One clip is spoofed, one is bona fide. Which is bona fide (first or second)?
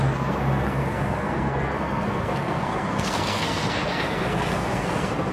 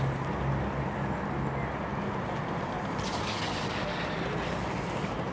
second